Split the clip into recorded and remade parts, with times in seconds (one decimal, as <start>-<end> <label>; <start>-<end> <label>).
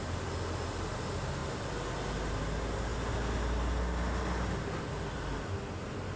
0.0-6.2 recorded